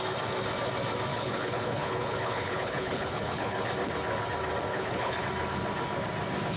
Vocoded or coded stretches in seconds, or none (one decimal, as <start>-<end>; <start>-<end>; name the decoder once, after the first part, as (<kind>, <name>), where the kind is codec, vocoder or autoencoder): 1.1-3.7 (codec, HILCodec); 4.7-5.2